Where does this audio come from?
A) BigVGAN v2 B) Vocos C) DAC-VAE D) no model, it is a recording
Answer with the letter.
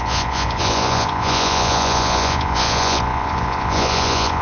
B